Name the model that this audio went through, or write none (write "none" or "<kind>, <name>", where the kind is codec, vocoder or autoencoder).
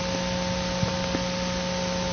none